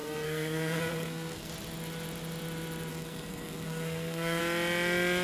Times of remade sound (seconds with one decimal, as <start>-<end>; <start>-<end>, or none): 0.0-1.5; 2.9-4.4